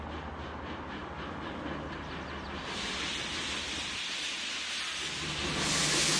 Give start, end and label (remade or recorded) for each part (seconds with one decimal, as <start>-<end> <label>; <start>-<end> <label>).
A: 0.0-6.2 recorded